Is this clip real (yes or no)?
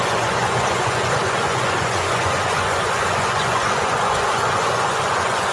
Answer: no